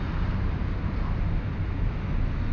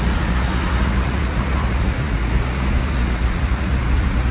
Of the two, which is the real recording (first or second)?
first